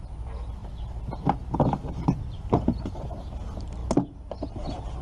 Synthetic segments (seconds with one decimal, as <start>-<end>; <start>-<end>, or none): none